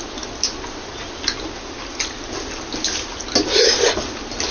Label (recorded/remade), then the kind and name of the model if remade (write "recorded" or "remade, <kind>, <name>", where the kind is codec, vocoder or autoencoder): recorded